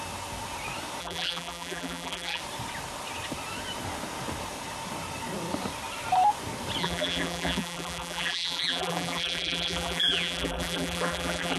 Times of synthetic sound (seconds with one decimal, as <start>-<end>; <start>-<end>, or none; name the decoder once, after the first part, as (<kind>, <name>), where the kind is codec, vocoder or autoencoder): 1.0-2.4 (vocoder, BigVGAN v2); 6.8-11.6